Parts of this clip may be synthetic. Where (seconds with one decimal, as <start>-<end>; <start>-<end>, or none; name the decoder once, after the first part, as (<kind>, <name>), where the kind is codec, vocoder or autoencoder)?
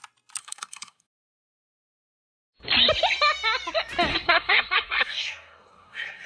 0.4-1.3 (codec, SNAC); 4.1-6.3